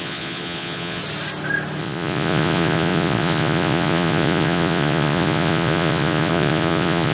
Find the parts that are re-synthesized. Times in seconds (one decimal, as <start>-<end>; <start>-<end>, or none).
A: 0.0-1.0; 1.8-7.1